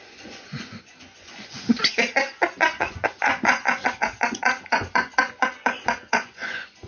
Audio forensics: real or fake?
fake